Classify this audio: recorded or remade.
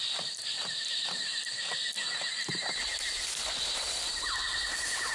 recorded